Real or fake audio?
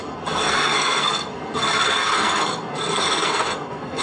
fake